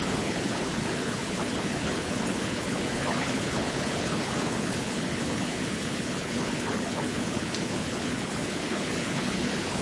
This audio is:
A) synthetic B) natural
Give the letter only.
A